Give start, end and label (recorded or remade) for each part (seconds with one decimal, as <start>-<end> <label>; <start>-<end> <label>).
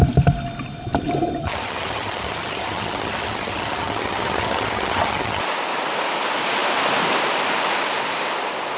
0.0-1.4 recorded; 1.4-5.4 remade; 5.4-8.8 recorded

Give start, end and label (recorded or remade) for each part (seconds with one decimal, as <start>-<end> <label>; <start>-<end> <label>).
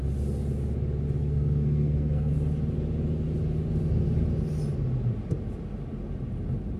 0.0-1.2 recorded; 1.2-2.3 remade; 2.3-6.8 recorded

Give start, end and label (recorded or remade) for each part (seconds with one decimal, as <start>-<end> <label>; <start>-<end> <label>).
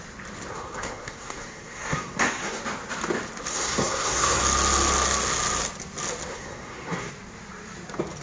0.0-0.5 recorded; 0.5-2.6 remade; 2.6-3.5 recorded; 3.5-4.4 remade; 4.4-6.3 recorded; 6.3-7.1 remade; 7.1-8.2 recorded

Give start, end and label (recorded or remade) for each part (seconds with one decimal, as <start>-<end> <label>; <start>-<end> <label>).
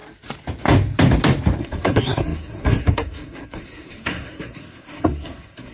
0.0-1.6 recorded; 1.6-5.7 remade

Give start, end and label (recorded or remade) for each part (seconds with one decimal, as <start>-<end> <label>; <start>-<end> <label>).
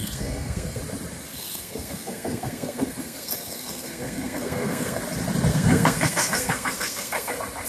0.0-0.8 remade; 0.8-1.3 recorded; 1.3-5.0 remade; 5.0-5.5 recorded; 5.5-7.3 remade; 7.3-7.7 recorded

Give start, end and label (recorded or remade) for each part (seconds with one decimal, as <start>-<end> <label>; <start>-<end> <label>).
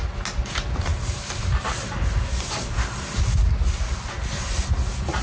0.0-5.2 recorded